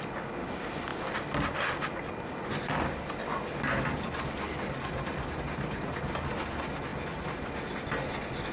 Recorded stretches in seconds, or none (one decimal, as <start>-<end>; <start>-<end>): 0.0-8.5